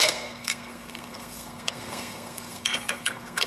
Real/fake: fake